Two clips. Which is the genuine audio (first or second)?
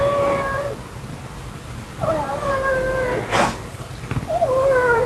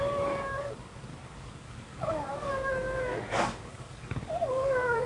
first